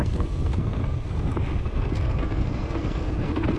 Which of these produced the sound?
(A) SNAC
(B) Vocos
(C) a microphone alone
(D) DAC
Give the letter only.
A